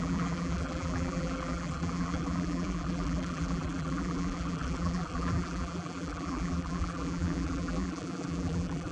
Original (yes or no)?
no